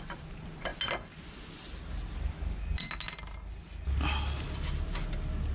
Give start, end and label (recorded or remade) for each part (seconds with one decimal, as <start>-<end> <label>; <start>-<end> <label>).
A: 0.0-5.5 recorded